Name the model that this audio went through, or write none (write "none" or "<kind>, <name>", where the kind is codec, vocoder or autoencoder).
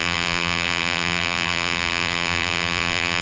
vocoder, BigVGAN v2